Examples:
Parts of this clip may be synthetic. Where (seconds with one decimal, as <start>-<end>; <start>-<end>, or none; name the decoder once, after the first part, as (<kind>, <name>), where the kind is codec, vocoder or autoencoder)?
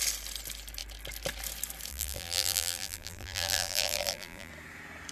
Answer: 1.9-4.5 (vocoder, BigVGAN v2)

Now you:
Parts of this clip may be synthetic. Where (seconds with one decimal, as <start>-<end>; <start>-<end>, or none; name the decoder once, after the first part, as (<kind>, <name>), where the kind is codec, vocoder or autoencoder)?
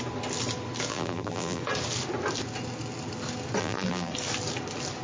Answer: 0.9-1.6 (vocoder, BigVGAN v2); 3.6-4.1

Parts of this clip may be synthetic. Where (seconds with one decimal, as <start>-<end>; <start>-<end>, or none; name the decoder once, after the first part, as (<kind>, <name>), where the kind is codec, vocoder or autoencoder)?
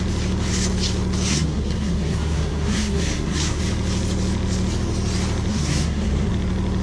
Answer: 1.3-3.6 (codec, SNAC); 5.5-6.3